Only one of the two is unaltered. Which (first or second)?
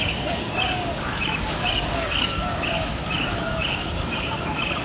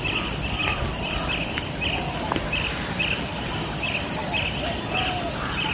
second